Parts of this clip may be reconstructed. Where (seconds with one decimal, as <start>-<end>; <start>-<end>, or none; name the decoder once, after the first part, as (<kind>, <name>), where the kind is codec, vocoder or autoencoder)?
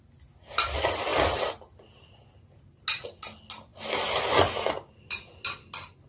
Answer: none